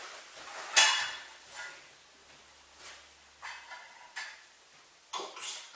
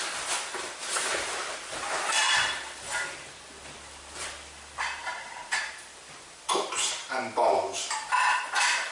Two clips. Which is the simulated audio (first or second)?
second